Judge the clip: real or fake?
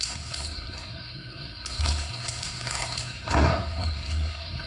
fake